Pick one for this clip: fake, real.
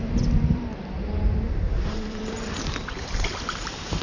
fake